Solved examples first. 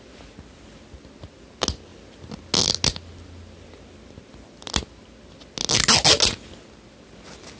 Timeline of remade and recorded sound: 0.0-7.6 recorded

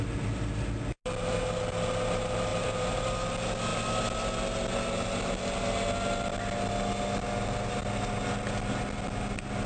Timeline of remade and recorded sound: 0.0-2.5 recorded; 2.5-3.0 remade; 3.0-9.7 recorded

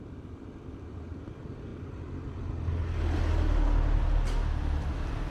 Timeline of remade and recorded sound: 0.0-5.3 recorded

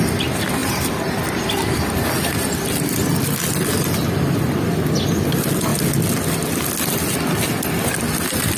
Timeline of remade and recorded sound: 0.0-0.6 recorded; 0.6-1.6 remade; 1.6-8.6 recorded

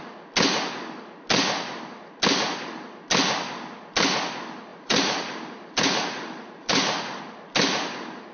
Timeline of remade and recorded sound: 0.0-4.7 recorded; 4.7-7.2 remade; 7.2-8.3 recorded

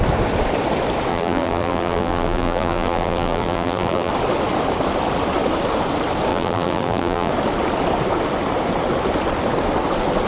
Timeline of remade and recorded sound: 0.0-1.1 recorded; 1.1-4.1 remade; 4.1-6.3 recorded; 6.3-7.3 remade; 7.3-10.3 recorded

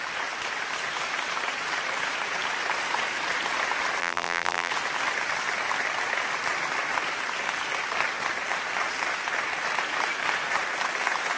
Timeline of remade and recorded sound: 0.0-4.0 recorded; 4.0-4.7 remade; 4.7-11.4 recorded